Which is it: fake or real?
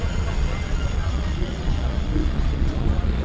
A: fake